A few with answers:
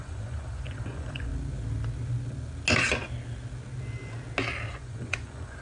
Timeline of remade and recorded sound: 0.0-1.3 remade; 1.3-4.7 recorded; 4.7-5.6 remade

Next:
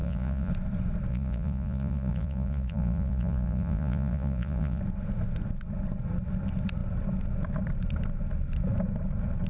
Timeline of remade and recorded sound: 0.0-0.5 remade; 0.5-1.1 recorded; 1.1-4.8 remade; 4.8-9.5 recorded

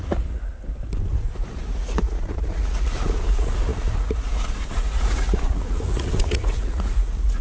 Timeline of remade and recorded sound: 0.0-0.5 remade; 0.5-1.1 recorded; 1.1-7.4 remade

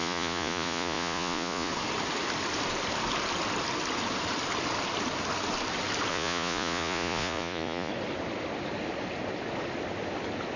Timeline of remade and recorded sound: 0.0-1.7 remade; 1.7-6.1 recorded; 6.1-7.9 remade; 7.9-10.6 recorded

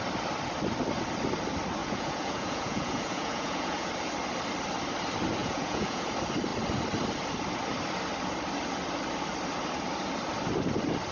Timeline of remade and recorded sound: 0.0-1.8 recorded; 1.8-3.9 remade; 3.9-5.4 recorded; 5.4-6.1 remade; 6.1-11.1 recorded